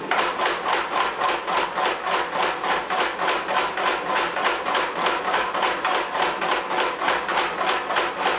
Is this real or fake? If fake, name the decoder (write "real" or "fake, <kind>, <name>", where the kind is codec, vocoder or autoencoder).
real